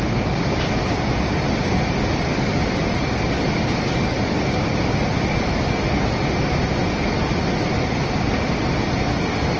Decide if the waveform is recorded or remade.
recorded